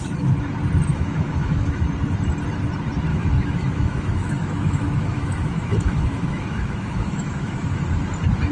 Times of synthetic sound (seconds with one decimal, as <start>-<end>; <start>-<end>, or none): 0.9-1.8; 3.1-7.8

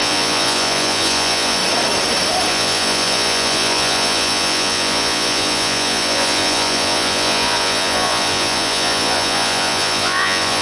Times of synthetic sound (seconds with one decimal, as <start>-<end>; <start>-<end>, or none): 0.0-1.6; 2.5-10.6

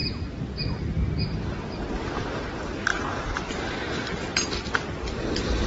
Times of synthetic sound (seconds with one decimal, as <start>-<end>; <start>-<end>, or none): 2.9-3.5

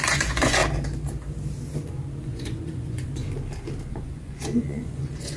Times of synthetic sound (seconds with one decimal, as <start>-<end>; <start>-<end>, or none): 0.0-0.6; 2.2-3.2; 3.9-5.4